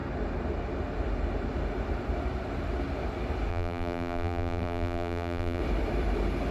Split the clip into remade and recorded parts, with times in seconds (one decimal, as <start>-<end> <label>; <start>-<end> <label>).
0.0-3.5 recorded; 3.5-5.6 remade; 5.6-6.5 recorded